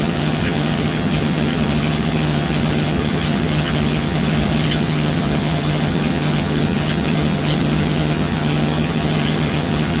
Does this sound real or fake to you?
fake